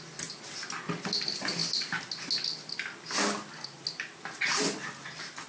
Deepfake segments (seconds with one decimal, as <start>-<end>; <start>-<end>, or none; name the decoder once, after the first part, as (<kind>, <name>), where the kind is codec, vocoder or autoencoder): none